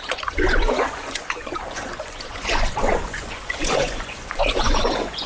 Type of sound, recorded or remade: remade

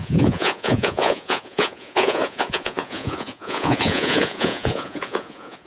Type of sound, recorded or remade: remade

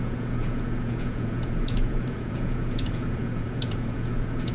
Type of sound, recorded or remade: remade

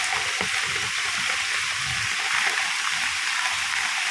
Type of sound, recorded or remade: recorded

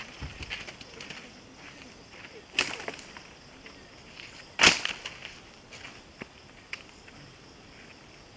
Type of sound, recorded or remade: recorded